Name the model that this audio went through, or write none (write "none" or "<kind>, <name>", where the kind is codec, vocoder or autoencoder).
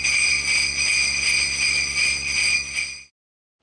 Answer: none